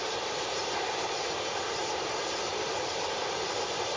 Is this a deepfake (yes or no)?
yes